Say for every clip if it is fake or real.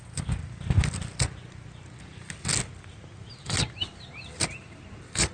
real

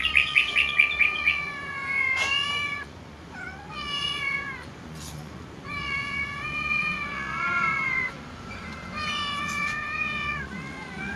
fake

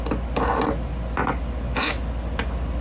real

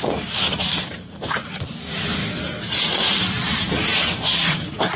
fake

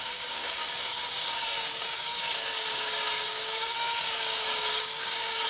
fake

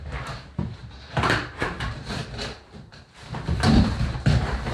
fake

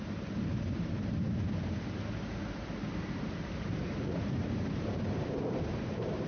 fake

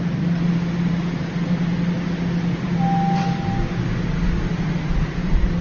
real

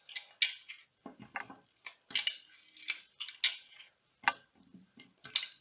real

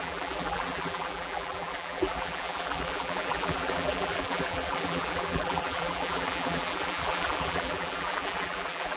fake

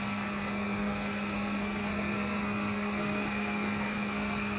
fake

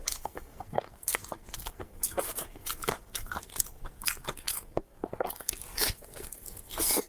fake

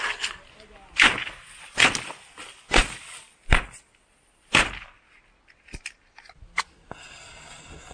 real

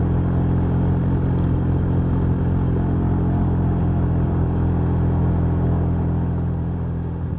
real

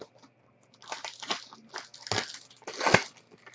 real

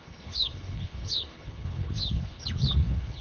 fake